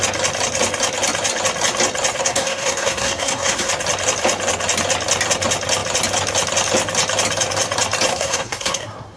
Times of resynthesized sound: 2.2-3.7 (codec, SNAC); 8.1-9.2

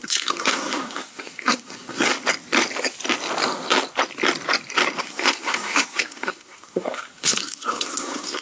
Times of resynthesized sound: 0.0-2.1 (codec, SNAC); 5.0-8.4